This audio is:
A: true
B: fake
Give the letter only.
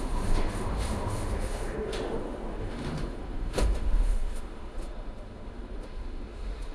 B